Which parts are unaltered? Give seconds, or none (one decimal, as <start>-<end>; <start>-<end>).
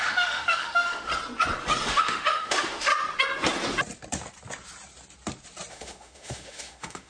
1.1-1.9; 2.9-5.7